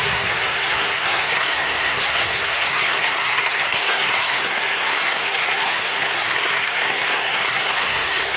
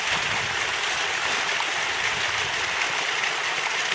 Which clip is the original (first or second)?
second